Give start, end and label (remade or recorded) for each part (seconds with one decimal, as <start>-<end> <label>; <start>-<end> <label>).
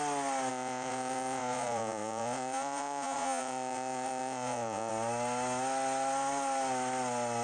0.0-0.5 recorded; 0.5-4.9 remade; 4.9-7.4 recorded